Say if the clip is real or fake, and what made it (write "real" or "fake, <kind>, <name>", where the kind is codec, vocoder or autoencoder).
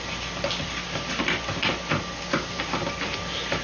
real